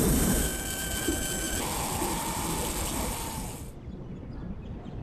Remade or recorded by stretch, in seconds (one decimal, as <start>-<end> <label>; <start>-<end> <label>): 0.0-5.0 recorded